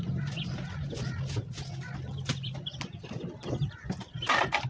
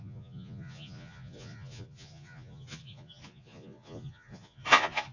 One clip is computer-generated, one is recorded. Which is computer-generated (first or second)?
second